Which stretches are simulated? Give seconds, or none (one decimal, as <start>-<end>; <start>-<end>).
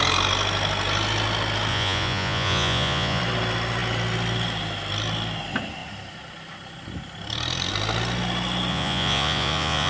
1.7-3.2; 8.7-9.9